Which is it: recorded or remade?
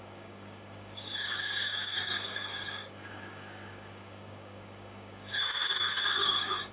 remade